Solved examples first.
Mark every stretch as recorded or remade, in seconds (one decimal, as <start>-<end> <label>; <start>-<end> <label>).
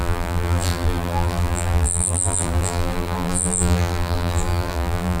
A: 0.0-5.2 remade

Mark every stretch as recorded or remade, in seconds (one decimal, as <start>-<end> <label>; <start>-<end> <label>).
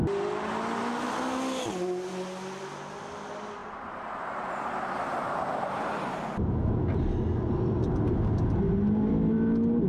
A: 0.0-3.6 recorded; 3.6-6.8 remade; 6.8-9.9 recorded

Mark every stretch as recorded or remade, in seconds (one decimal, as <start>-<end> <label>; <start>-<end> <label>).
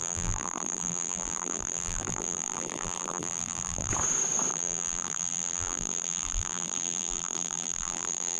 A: 0.0-3.9 remade; 3.9-4.5 recorded; 4.5-8.4 remade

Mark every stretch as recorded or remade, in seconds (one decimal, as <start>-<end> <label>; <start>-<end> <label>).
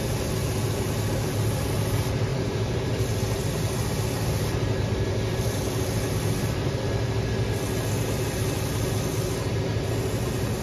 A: 0.0-2.3 recorded; 2.3-6.9 remade; 6.9-10.6 recorded